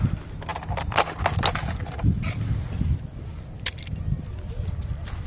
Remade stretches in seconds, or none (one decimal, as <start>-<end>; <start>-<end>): none